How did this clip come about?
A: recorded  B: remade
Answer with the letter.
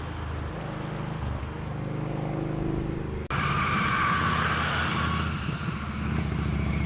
A